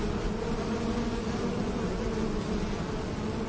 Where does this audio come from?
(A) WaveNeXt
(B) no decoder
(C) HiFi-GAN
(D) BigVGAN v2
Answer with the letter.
B